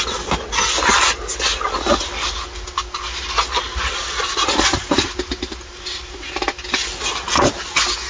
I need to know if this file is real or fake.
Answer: real